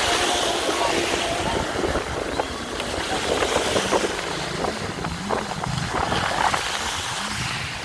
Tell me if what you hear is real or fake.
real